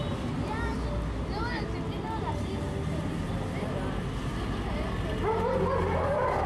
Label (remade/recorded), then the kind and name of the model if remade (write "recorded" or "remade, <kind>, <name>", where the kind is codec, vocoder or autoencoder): recorded